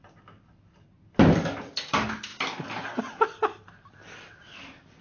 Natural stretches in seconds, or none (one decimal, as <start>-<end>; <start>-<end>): 0.0-5.0